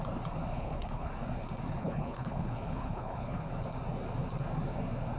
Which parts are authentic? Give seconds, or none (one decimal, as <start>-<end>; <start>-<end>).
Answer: 0.0-0.5; 1.1-1.8; 3.5-5.2